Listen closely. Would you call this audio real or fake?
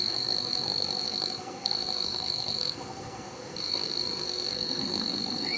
fake